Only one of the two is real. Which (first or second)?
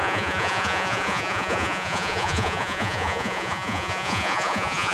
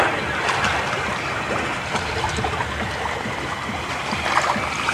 second